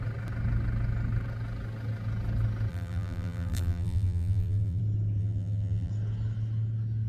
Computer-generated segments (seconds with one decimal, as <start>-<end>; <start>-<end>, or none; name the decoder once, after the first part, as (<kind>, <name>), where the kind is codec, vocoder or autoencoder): 2.7-4.8 (vocoder, BigVGAN v2); 5.2-5.9